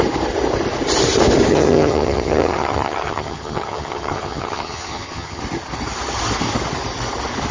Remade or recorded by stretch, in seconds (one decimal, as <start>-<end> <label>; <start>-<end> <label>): 0.0-1.5 recorded; 1.5-5.4 remade; 5.4-7.5 recorded